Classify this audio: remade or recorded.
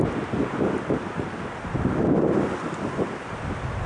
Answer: recorded